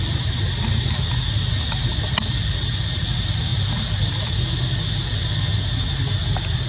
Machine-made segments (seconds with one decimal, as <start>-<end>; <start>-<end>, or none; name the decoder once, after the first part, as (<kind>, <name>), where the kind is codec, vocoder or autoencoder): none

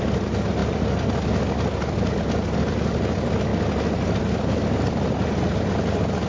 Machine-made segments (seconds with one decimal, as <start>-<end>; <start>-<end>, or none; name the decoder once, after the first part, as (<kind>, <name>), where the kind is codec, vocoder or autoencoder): none

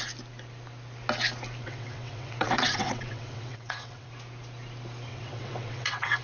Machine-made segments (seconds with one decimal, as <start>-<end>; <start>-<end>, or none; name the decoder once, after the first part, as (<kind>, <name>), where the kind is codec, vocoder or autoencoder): 1.6-4.1 (vocoder, WaveNeXt); 5.1-6.2